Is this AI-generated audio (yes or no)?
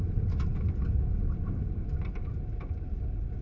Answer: yes